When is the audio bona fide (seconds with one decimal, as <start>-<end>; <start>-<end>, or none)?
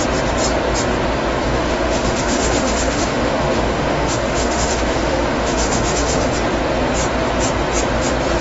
0.0-1.4; 6.3-8.4